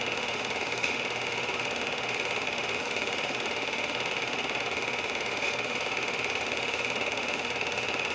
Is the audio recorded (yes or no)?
no